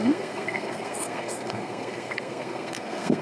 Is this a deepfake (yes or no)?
yes